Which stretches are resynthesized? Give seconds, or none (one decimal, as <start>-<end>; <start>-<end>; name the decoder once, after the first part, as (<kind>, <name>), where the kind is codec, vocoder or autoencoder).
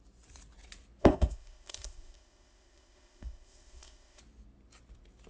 1.0-4.2 (codec, ZipCodec)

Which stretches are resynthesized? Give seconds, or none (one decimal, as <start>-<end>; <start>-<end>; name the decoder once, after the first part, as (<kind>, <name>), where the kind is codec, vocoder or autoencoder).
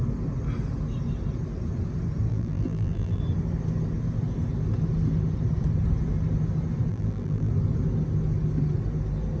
2.3-3.2 (vocoder, BigVGAN v2); 6.9-7.5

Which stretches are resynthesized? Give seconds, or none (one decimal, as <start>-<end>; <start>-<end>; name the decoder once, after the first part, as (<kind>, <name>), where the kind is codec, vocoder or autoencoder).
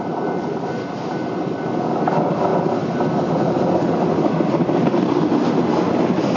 none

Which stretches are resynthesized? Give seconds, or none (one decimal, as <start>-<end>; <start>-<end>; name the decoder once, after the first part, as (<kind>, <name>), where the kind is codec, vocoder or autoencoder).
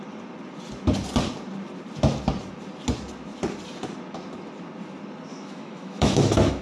5.3-6.6 (autoencoder, DAC-VAE)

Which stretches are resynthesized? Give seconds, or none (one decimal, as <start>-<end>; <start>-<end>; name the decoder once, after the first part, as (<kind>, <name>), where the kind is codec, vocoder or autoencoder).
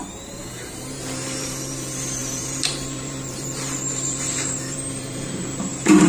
0.0-6.1 (vocoder, BigVGAN v2)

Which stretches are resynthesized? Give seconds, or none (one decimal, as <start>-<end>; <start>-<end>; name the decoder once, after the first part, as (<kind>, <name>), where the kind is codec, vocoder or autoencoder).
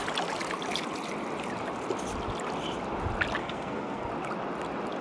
3.4-4.1 (codec, SNAC)